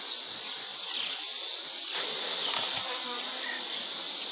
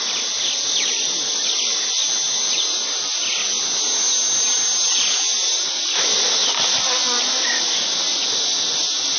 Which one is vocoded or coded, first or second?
first